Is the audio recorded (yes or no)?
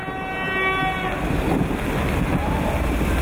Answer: yes